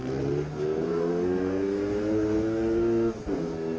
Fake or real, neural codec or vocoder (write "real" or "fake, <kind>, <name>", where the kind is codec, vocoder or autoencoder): fake, codec, SNAC